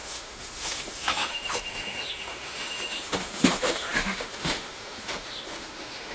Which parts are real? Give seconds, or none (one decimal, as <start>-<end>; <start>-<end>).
none